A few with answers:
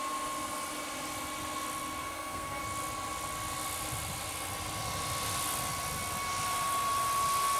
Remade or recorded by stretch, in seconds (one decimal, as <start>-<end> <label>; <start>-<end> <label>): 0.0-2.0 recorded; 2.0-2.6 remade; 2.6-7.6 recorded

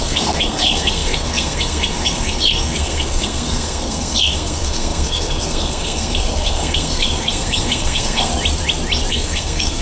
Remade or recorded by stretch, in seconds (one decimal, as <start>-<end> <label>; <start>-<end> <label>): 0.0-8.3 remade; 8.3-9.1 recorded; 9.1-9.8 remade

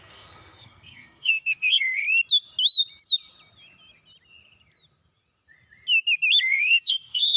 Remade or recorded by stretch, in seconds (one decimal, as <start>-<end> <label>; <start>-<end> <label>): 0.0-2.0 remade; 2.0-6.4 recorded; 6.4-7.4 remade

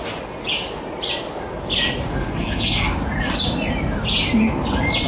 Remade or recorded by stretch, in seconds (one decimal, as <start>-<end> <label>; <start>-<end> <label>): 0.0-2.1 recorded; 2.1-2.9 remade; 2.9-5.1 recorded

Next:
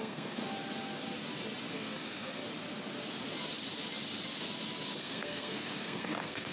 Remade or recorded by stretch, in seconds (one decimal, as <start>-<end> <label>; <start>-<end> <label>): 0.0-0.4 remade; 0.4-1.7 recorded; 1.7-2.4 remade; 2.4-5.0 recorded; 5.0-6.5 remade

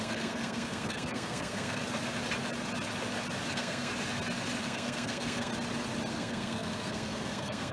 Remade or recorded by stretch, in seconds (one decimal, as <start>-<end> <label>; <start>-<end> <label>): 0.0-1.8 remade; 1.8-3.5 recorded; 3.5-3.9 remade; 3.9-4.6 recorded; 4.6-5.5 remade; 5.5-6.1 recorded; 6.1-7.7 remade